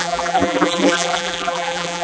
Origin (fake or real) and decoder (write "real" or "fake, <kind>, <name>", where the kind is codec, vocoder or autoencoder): fake, vocoder, BigVGAN v2